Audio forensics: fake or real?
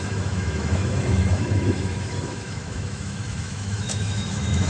fake